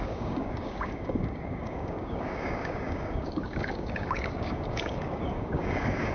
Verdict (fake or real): fake